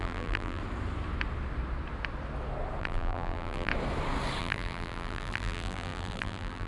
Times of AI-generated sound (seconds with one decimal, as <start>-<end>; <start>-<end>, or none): 0.0-0.6; 2.8-3.7; 4.4-6.7